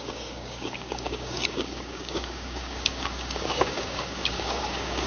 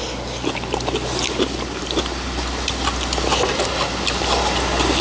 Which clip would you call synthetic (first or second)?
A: first